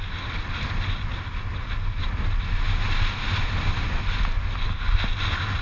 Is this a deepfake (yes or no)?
no